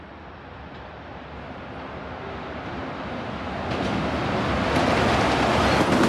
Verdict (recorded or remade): recorded